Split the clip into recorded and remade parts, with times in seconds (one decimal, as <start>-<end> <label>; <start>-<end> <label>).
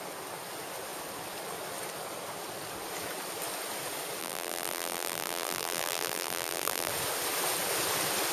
0.0-4.2 recorded; 4.2-6.9 remade; 6.9-8.3 recorded